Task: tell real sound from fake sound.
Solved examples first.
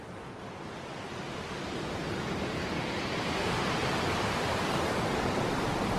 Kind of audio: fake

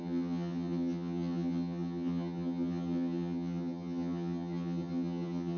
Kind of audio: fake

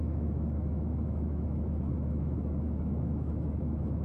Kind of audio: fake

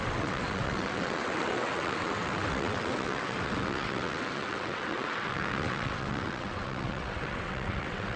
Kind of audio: fake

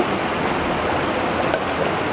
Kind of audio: real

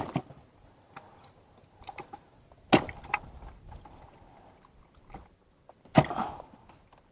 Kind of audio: real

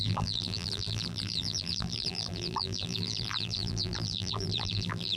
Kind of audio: fake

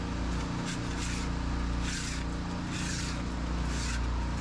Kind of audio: real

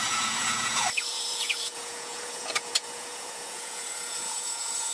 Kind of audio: fake